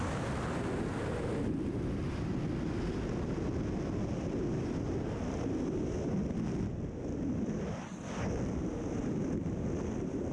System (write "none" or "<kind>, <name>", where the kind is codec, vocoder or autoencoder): none